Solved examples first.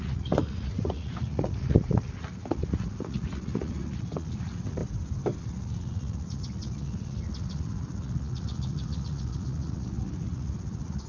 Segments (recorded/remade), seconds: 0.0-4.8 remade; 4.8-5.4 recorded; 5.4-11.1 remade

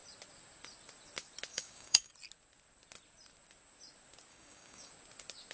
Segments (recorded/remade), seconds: 0.0-1.5 recorded; 1.5-2.1 remade; 2.1-4.3 recorded; 4.3-4.9 remade; 4.9-5.5 recorded

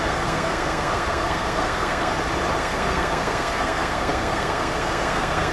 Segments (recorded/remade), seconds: 0.0-2.1 remade; 2.1-2.6 recorded; 2.6-5.5 remade

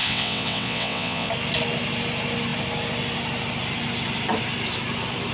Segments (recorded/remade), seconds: 0.0-1.3 remade; 1.3-5.3 recorded

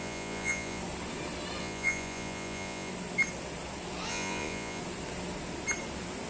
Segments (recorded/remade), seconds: 0.0-0.8 remade; 0.8-1.6 recorded; 1.6-2.9 remade; 2.9-4.1 recorded; 4.1-4.8 remade; 4.8-6.3 recorded

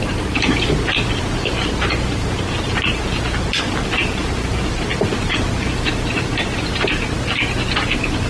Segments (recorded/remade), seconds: 0.0-3.8 recorded; 3.8-8.3 remade